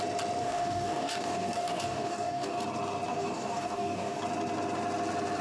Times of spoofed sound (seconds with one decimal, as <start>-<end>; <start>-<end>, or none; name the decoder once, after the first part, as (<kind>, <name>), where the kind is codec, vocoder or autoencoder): 0.4-2.6 (codec, DAC); 3.1-4.2